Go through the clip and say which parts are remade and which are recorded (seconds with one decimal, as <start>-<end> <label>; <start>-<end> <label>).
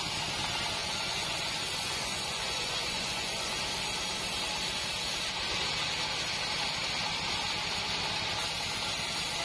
0.0-0.8 recorded; 0.8-3.6 remade; 3.6-9.4 recorded